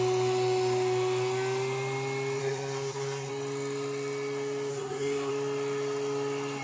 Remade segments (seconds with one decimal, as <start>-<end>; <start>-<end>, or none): 2.4-3.3; 4.7-5.3